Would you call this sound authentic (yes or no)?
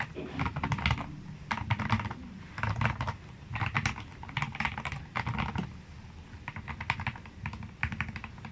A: yes